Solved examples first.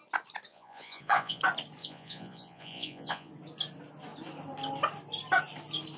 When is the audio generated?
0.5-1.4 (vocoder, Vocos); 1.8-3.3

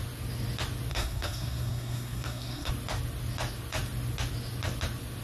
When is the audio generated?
0.9-2.7 (codec, SNAC)

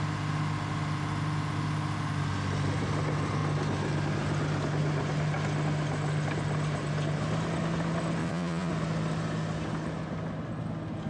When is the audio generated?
8.2-8.7 (vocoder, Vocos)

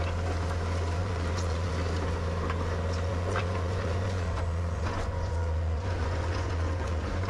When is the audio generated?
1.0-1.7 (vocoder, Vocos); 3.1-7.3

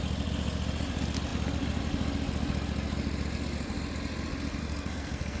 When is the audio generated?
4.6-5.4 (codec, SNAC)

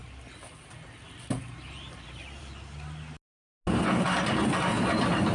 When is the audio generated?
none